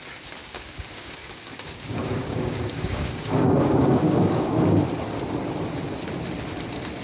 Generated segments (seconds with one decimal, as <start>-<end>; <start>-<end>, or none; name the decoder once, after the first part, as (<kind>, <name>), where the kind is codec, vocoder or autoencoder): 0.4-4.6 (codec, DAC)

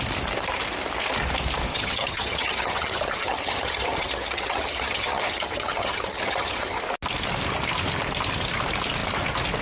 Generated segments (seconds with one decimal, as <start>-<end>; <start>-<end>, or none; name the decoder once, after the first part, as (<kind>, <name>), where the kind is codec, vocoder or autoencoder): 1.7-6.8 (vocoder, HiFi-GAN)

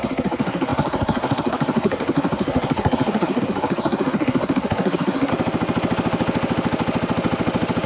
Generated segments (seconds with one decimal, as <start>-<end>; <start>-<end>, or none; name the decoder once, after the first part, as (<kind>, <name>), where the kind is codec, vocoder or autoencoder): 0.0-5.3 (codec, SNAC)

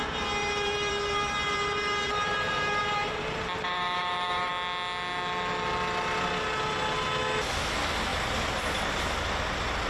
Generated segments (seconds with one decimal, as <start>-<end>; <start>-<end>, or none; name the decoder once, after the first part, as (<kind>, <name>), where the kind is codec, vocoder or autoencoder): 0.4-4.5 (vocoder, BigVGAN v2)